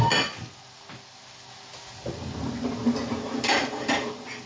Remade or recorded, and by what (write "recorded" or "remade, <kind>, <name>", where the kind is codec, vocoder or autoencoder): recorded